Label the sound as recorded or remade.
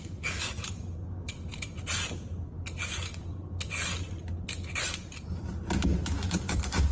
recorded